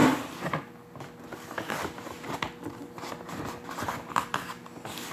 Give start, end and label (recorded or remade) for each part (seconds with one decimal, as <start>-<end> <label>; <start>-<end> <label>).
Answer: 0.0-5.1 recorded